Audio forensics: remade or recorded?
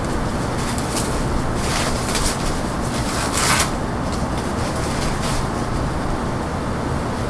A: recorded